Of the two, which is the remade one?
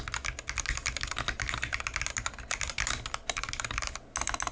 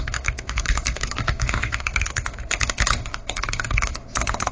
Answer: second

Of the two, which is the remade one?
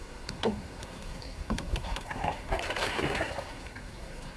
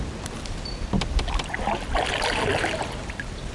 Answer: first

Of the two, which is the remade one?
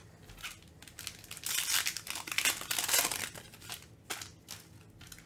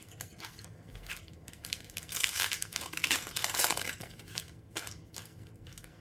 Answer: second